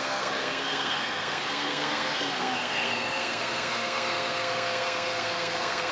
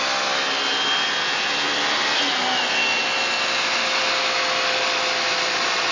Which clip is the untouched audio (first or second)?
second